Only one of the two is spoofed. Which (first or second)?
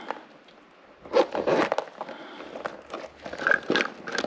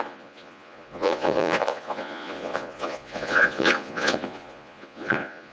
second